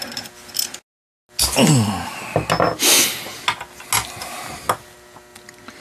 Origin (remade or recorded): recorded